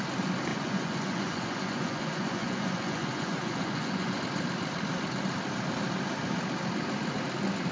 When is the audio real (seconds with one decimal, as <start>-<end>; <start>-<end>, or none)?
0.0-0.5; 4.2-7.7